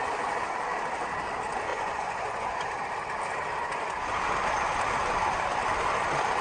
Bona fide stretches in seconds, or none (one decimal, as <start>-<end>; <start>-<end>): 0.0-1.7; 2.7-3.6; 4.1-6.4

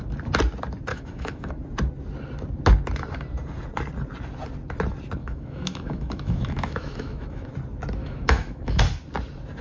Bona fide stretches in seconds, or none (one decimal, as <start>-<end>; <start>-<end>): 0.0-0.9; 1.5-5.2; 7.5-8.0; 8.8-9.6

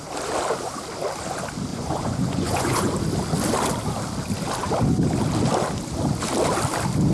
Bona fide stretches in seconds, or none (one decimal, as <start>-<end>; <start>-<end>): 0.0-1.7; 2.9-7.1

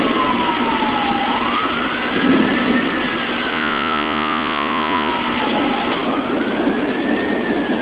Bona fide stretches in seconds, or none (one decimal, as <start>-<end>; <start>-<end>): 0.0-3.5; 5.1-7.8

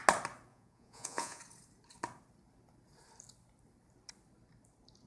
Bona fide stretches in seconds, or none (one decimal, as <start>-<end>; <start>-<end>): 0.0-0.5; 1.4-5.1

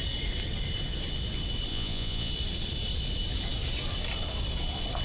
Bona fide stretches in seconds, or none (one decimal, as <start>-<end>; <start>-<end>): 0.0-1.7; 2.3-5.0

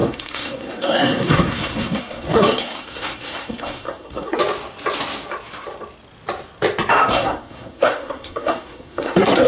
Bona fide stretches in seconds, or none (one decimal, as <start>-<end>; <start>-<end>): 4.4-7.1